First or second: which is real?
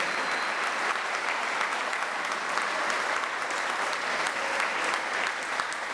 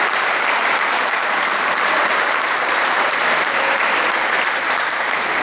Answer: first